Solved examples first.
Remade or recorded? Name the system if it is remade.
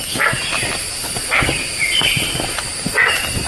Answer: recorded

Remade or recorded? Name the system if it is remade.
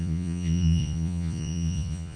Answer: remade, vocoder, Vocos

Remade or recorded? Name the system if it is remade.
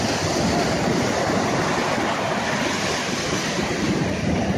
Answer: recorded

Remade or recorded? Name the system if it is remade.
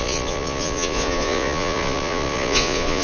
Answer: remade, vocoder, Vocos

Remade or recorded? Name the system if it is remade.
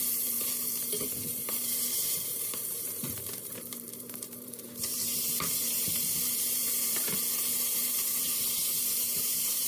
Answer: remade, vocoder, BigVGAN v2